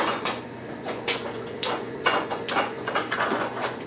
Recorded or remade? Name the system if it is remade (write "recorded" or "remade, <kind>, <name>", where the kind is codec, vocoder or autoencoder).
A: remade, vocoder, Vocos